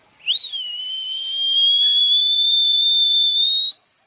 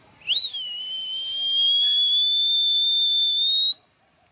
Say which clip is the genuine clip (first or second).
second